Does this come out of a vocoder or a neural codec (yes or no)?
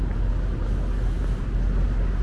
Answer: no